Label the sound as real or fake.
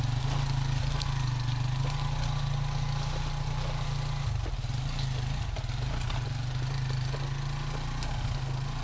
real